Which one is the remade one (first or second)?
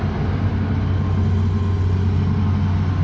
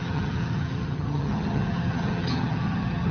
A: second